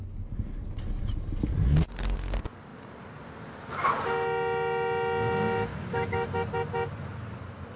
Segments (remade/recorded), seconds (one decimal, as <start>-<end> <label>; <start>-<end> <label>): 0.0-7.8 recorded